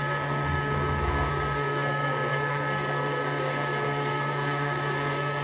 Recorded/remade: remade